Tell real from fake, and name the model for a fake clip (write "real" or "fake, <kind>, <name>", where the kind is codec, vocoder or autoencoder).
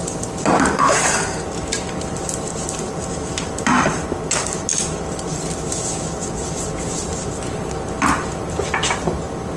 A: real